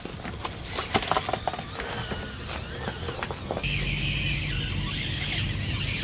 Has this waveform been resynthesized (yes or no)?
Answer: no